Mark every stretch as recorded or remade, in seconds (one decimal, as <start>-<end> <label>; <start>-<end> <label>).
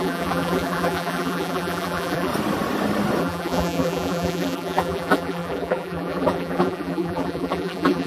0.0-2.3 remade; 2.3-3.2 recorded; 3.2-8.1 remade